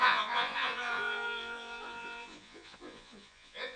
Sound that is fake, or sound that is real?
fake